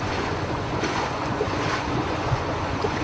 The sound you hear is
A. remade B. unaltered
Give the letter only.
A